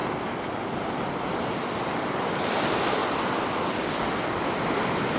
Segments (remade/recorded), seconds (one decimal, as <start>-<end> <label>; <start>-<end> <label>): 0.0-5.2 recorded